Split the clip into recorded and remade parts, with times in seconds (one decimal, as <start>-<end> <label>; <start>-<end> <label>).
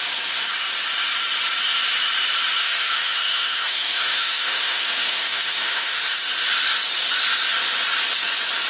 0.0-2.6 recorded; 2.6-6.0 remade; 6.0-8.7 recorded